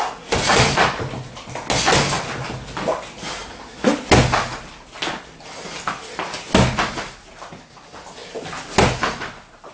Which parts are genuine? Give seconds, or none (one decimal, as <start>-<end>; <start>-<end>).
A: 0.0-9.7